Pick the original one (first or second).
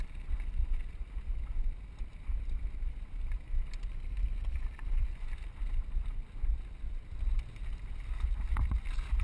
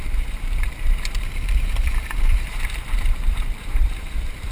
first